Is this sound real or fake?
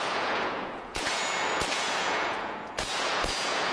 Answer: fake